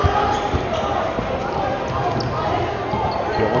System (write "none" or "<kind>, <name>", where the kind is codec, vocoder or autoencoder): none